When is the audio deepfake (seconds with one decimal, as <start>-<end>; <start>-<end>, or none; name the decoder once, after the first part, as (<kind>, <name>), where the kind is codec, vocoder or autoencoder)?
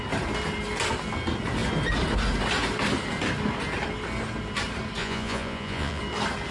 5.0-6.0 (vocoder, Vocos)